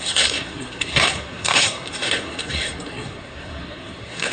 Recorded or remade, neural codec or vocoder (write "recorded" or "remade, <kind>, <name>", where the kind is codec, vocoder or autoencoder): remade, codec, SNAC